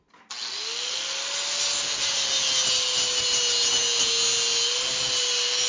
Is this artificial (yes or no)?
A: no